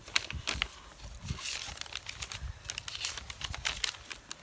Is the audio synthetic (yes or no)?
no